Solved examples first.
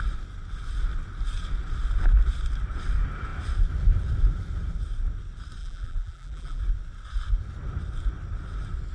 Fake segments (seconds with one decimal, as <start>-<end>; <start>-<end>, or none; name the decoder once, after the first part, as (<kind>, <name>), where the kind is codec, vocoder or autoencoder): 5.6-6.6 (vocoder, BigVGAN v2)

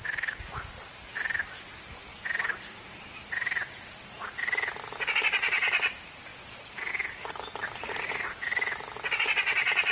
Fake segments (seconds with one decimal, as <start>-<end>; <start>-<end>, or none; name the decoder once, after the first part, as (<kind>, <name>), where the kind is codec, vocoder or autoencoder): 2.1-4.3 (vocoder, BigVGAN v2); 6.3-6.9

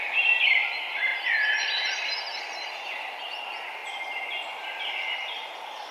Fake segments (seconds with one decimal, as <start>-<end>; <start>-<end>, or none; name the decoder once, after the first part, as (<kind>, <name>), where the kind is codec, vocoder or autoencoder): 0.0-1.1 (vocoder, BigVGAN v2); 2.4-3.8

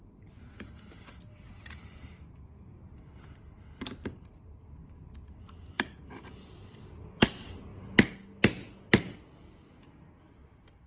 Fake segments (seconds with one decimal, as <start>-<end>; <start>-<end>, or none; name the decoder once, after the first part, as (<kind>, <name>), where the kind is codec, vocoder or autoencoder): 0.0-7.7 (vocoder, BigVGAN v2); 10.2-10.9

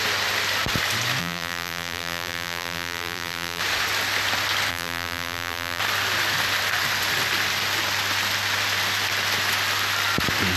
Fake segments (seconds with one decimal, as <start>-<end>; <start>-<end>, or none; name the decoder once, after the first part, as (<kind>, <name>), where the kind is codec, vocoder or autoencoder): 1.2-3.6 (vocoder, BigVGAN v2); 4.7-5.8